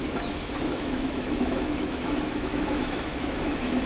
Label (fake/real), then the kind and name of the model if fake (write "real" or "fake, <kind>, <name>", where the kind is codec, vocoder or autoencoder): fake, autoencoder, DAC-VAE